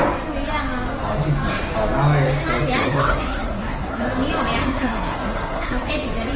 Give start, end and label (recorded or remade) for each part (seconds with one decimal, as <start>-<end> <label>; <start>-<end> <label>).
0.0-2.8 recorded; 2.8-4.0 remade; 4.0-4.6 recorded; 4.6-5.9 remade; 5.9-6.4 recorded